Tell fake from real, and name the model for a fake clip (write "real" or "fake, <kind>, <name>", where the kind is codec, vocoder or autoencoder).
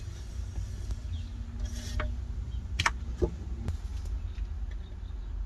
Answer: real